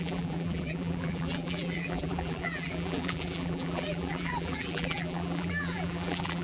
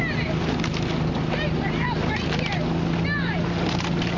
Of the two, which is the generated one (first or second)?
first